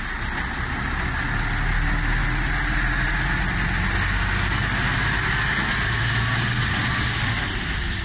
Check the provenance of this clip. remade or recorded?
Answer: recorded